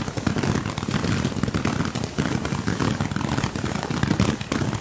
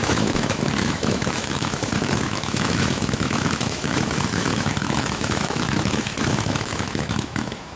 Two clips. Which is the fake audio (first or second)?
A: second